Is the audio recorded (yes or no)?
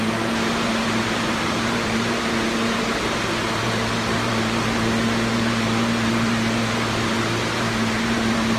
no